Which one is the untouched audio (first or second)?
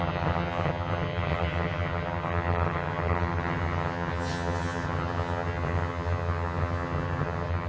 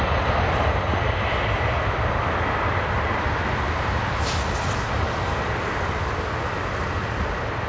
second